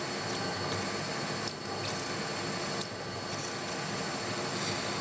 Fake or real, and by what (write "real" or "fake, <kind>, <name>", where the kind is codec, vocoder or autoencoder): real